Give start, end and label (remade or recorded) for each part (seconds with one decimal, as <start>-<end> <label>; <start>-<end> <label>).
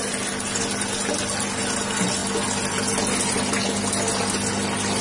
0.0-5.0 recorded